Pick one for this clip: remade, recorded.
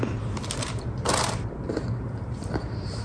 remade